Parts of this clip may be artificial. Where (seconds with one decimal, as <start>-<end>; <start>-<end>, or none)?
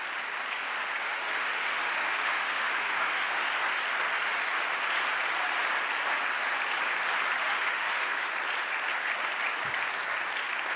1.0-3.5; 7.4-8.3